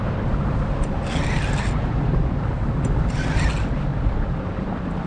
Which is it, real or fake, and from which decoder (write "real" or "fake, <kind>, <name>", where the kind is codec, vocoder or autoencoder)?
real